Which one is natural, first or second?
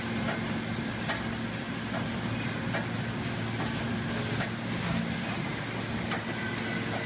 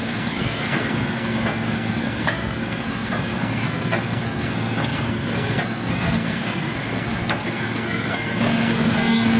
first